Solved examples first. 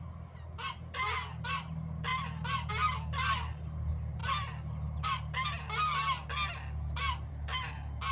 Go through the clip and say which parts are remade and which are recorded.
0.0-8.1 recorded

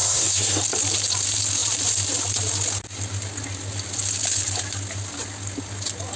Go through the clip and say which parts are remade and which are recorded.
0.0-0.6 remade; 0.6-6.2 recorded

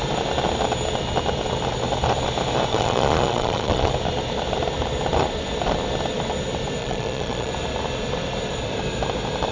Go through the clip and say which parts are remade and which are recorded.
0.0-2.7 recorded; 2.7-3.9 remade; 3.9-6.8 recorded; 6.8-7.5 remade; 7.5-9.5 recorded

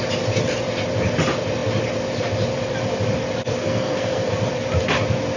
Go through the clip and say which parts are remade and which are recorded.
0.0-3.6 recorded; 3.6-4.3 remade; 4.3-5.4 recorded